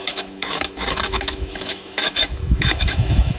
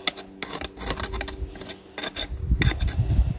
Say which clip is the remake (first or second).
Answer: first